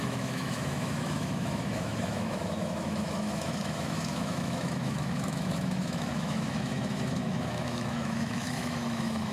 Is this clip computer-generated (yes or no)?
yes